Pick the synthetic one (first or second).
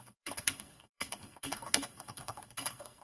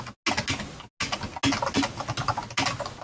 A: first